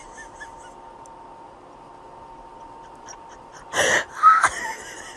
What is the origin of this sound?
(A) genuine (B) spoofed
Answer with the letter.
A